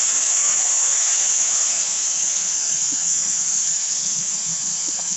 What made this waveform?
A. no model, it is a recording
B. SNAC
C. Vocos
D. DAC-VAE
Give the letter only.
B